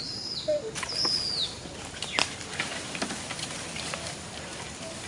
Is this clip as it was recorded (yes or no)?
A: no